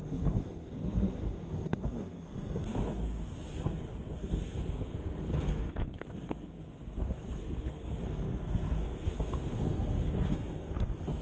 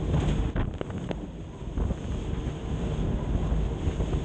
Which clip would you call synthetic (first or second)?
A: first